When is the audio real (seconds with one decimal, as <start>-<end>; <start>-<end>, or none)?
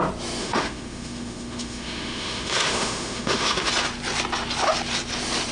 0.0-0.4; 3.7-5.5